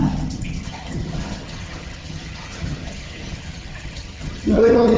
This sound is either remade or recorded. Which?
remade